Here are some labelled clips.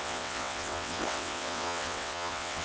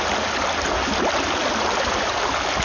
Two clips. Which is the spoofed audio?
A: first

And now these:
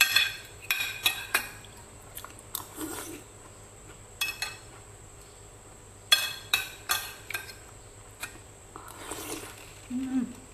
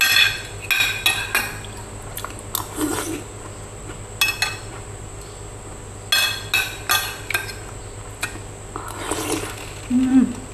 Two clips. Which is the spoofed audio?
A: first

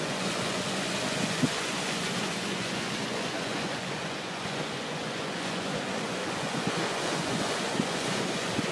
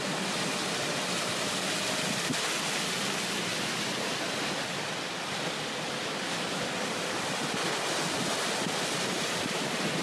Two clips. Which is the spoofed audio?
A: first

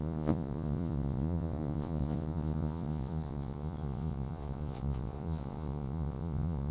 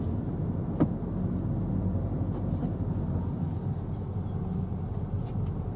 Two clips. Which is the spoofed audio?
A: first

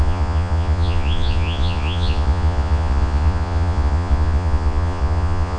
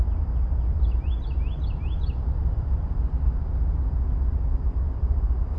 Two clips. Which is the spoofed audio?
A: first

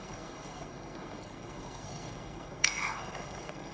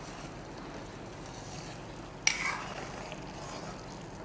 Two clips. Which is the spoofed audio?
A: first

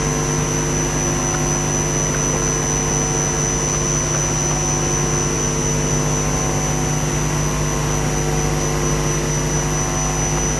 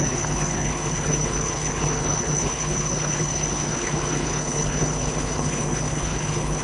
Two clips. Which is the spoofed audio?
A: second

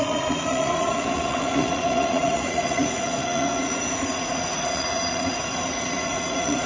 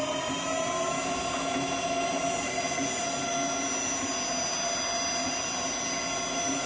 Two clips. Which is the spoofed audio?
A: first